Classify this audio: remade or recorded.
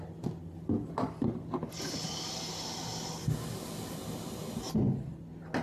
recorded